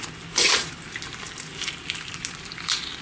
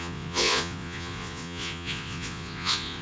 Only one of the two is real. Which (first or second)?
first